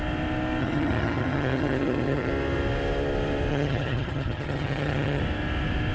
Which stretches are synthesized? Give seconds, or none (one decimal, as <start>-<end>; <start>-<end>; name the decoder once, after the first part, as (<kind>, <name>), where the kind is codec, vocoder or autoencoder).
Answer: 0.6-2.3 (vocoder, HiFi-GAN); 3.5-5.2